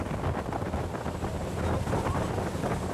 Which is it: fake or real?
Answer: real